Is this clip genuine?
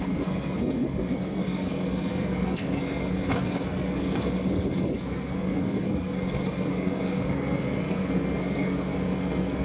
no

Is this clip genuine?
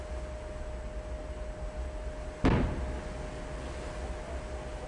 yes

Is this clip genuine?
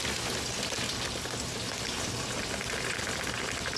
yes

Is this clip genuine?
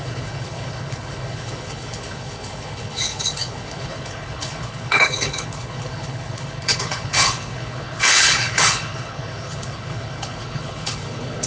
no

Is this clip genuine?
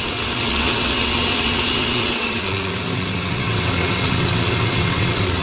no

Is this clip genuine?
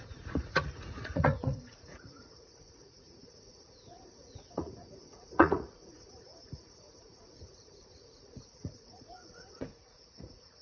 no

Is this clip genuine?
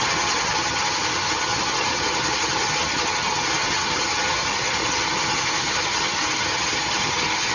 no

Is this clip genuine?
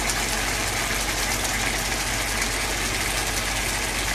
yes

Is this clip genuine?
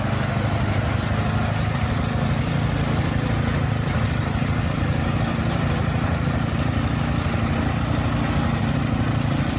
yes